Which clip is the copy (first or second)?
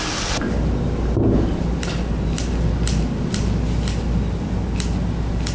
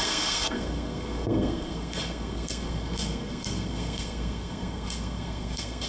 second